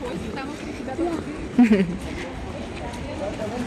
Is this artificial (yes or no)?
no